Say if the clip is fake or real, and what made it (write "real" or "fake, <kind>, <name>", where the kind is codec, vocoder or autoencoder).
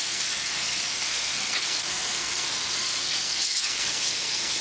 fake, codec, SNAC